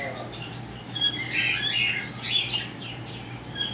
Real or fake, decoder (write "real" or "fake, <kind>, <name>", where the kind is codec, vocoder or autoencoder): real